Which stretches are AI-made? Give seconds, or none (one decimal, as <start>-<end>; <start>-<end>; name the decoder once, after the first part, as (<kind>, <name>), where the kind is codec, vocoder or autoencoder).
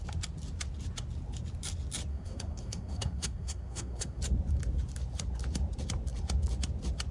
2.1-4.2 (codec, SNAC)